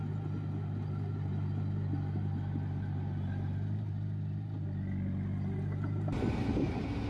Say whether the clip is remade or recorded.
recorded